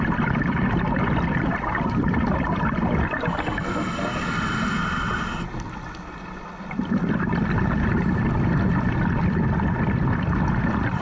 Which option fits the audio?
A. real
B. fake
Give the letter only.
A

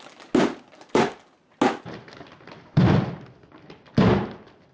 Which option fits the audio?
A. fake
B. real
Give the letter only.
B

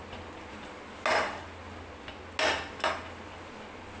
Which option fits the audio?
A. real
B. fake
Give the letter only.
A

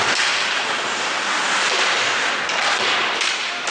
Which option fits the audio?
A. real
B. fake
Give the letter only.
B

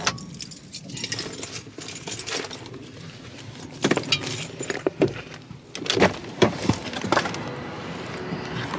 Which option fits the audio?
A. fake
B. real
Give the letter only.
B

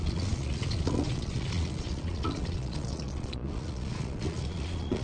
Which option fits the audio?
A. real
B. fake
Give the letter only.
B